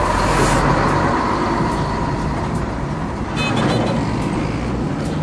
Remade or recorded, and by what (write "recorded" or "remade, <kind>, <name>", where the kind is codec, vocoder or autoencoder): recorded